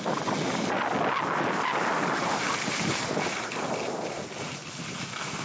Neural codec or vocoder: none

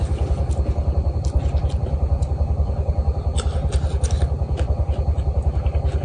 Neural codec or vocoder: none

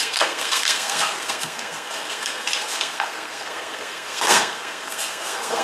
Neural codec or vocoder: codec, SNAC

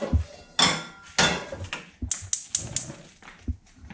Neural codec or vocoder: none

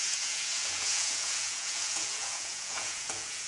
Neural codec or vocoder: vocoder, Vocos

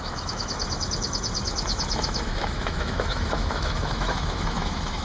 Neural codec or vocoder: autoencoder, DAC-VAE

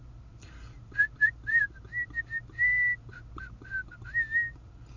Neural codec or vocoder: none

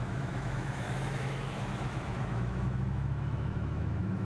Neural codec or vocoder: autoencoder, DAC-VAE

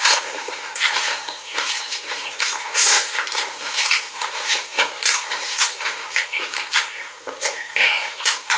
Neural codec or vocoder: codec, SNAC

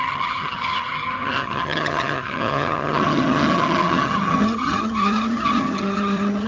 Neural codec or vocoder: vocoder, HiFi-GAN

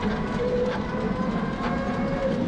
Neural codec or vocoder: none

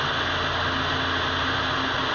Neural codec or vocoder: none